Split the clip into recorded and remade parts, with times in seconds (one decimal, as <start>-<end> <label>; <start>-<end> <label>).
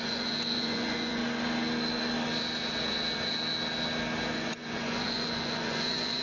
0.0-1.2 remade; 1.2-4.3 recorded; 4.3-6.2 remade